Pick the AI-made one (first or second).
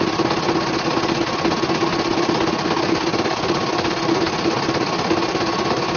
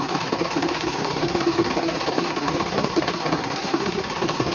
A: second